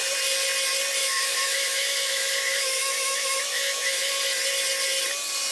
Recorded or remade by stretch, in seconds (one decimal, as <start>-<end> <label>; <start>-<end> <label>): 0.0-1.0 recorded; 1.0-4.1 remade; 4.1-5.5 recorded